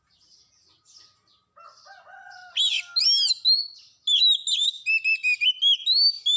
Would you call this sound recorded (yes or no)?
yes